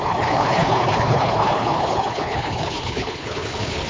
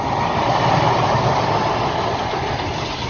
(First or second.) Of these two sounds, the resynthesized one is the first